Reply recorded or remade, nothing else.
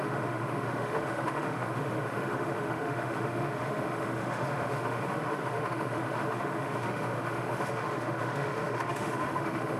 remade